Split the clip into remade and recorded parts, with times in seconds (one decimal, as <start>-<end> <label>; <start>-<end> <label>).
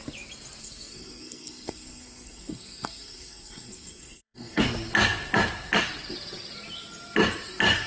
0.0-0.6 recorded; 0.6-4.6 remade; 4.6-7.9 recorded